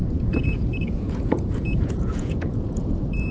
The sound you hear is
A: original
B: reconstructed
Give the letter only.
B